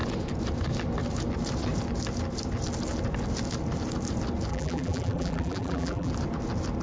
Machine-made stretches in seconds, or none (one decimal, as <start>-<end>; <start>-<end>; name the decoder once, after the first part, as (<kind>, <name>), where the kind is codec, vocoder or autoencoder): 4.5-6.1 (vocoder, BigVGAN v2)